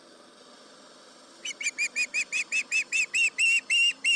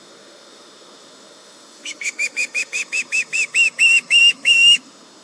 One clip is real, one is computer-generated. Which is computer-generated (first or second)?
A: second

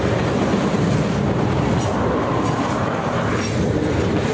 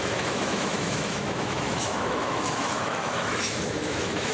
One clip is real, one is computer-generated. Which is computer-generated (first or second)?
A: second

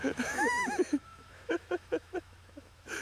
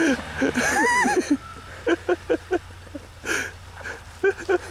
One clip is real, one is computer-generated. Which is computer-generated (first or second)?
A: first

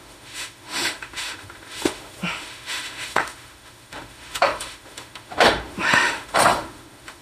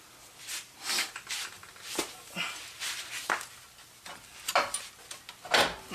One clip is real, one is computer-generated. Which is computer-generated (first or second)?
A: first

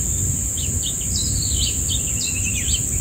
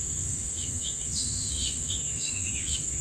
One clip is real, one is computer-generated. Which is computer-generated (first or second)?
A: second